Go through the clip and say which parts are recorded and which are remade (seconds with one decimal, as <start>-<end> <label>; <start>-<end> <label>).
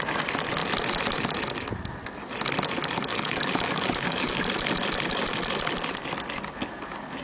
0.0-3.1 recorded; 3.1-4.4 remade; 4.4-7.2 recorded